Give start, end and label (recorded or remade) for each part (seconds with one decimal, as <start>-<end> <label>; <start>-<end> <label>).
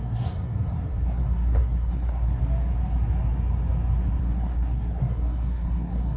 0.0-2.4 remade; 2.4-4.2 recorded; 4.2-6.2 remade